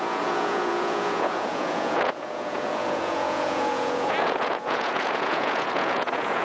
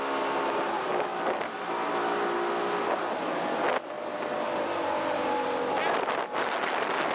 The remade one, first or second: first